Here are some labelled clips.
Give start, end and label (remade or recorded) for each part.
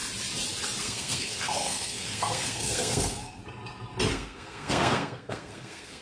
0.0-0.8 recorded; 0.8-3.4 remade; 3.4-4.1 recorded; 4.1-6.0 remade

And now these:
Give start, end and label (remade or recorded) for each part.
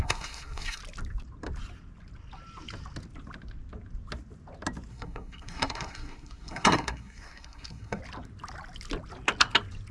0.0-0.8 remade; 0.8-4.9 recorded; 4.9-8.0 remade; 8.0-9.9 recorded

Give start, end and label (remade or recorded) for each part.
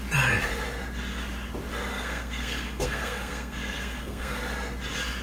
0.0-1.9 recorded; 1.9-4.4 remade; 4.4-5.2 recorded